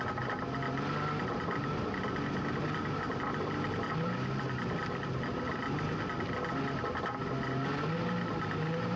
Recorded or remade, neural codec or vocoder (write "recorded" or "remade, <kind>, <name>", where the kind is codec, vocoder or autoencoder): recorded